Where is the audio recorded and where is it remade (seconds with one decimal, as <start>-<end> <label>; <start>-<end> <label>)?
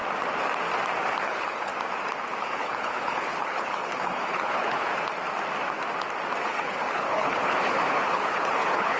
0.0-1.2 recorded; 1.2-1.7 remade; 1.7-2.4 recorded; 2.4-4.9 remade; 4.9-6.4 recorded; 6.4-9.0 remade